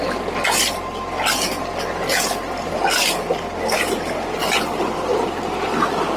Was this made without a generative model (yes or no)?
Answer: yes